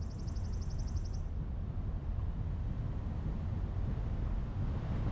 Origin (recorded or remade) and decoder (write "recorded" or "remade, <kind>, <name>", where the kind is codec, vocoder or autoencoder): recorded